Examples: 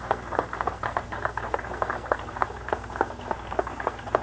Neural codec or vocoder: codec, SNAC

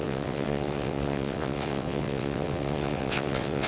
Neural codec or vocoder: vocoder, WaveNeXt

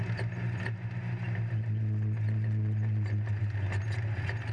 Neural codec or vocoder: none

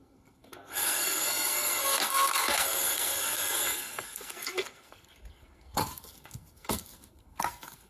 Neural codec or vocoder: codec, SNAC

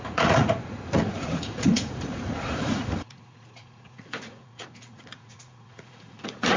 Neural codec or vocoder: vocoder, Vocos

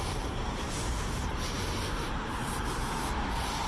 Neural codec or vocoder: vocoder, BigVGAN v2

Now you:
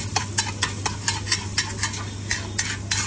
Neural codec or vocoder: none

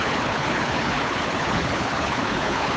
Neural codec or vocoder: codec, HILCodec